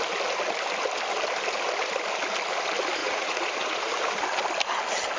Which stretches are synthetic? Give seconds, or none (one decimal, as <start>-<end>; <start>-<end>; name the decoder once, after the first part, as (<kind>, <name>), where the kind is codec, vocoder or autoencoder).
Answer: 3.0-3.9 (vocoder, Vocos)